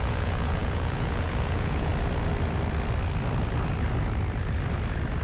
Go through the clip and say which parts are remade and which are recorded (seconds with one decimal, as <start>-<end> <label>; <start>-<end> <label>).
0.0-1.9 remade; 1.9-5.2 recorded